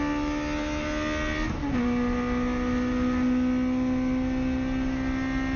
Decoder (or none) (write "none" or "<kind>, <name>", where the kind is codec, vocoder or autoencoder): none